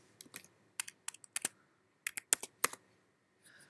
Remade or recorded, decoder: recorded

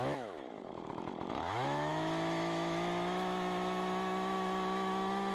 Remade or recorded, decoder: remade, autoencoder, DAC-VAE